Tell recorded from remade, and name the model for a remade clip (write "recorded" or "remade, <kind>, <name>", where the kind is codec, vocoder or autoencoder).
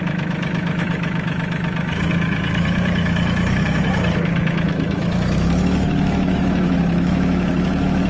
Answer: remade, autoencoder, DAC-VAE